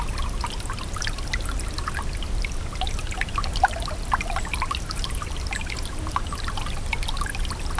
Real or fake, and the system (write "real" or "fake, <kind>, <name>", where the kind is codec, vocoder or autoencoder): real